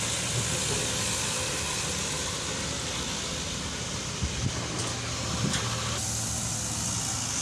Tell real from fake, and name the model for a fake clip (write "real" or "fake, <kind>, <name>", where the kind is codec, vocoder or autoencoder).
real